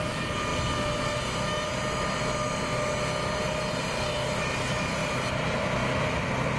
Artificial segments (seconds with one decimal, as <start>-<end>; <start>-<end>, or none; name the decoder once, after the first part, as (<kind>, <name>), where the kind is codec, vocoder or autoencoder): none